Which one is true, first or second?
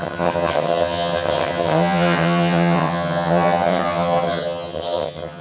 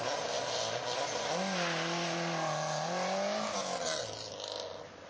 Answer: second